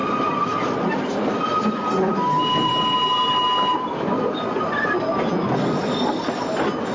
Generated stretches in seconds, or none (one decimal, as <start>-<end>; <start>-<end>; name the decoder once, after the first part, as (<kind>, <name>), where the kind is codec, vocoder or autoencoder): none